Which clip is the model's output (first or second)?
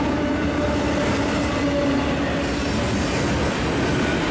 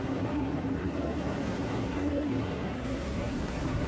second